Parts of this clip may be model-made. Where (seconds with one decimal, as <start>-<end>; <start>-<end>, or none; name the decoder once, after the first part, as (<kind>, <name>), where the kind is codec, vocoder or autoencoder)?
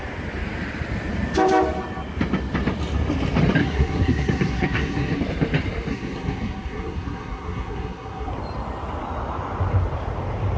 3.6-5.2 (codec, SNAC); 5.9-8.3